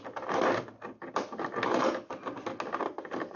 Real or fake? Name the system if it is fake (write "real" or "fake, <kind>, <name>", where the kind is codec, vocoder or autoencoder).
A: real